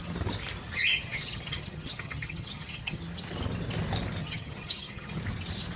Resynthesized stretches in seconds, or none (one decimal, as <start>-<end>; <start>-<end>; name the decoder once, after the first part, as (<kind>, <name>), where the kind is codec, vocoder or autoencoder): 0.9-3.0 (vocoder, HiFi-GAN); 4.2-5.2